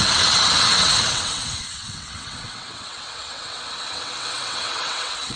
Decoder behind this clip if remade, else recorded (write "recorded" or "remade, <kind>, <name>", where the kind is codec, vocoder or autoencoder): remade, vocoder, WaveNeXt